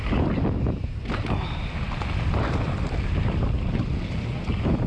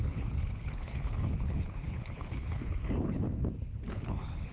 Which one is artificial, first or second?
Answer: second